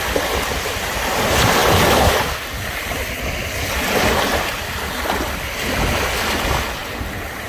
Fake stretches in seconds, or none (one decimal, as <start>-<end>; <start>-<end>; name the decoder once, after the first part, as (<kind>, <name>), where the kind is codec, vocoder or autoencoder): none